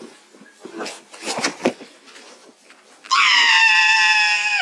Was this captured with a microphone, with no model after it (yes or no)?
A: yes